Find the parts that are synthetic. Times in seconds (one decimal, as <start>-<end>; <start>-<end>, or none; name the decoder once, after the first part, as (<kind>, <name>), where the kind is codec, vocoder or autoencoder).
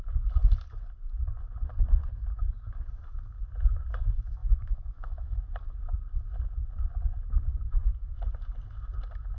4.4-5.4 (autoencoder, DAC-VAE); 7.5-8.2